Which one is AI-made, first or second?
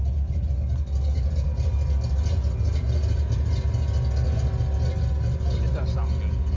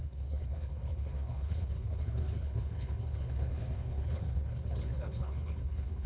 second